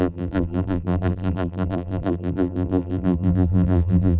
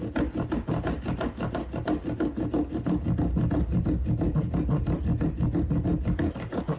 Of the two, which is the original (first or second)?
second